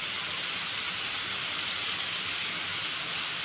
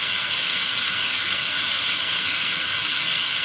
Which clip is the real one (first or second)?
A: first